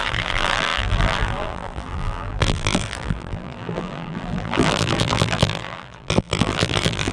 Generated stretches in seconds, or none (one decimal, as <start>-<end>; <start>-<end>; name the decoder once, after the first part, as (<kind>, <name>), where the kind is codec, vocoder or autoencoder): 0.0-7.1 (vocoder, BigVGAN v2)